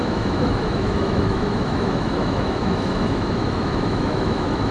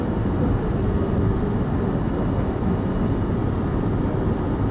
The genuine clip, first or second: second